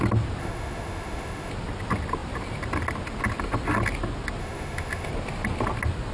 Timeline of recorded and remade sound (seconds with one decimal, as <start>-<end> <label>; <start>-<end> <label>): 0.0-0.4 recorded; 0.4-1.5 remade; 1.5-4.4 recorded; 4.4-5.1 remade; 5.1-6.1 recorded